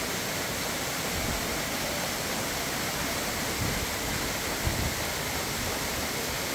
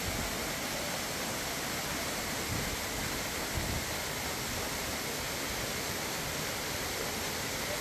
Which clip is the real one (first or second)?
second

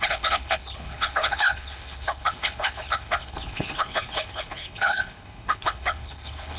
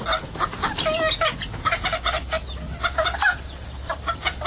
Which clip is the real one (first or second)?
second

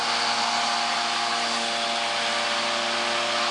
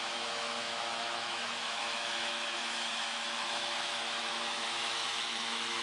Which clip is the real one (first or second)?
first